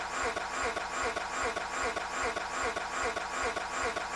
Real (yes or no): yes